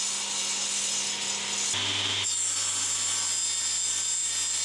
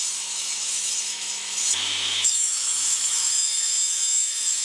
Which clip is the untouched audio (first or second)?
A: first